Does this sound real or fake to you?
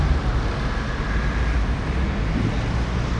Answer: real